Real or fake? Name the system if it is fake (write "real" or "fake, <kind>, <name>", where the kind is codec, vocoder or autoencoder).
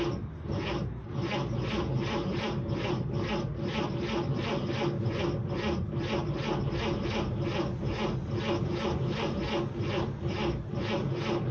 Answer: real